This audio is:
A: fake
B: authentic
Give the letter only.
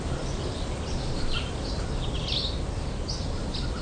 B